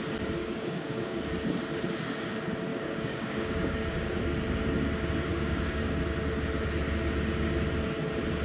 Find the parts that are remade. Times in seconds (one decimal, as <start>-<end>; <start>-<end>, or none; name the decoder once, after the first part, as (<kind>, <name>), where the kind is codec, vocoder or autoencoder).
0.4-1.2 (codec, DAC); 2.7-4.1; 5.3-6.0